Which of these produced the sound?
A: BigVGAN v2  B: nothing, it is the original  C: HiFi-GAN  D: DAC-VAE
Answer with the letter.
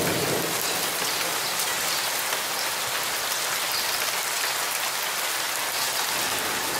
B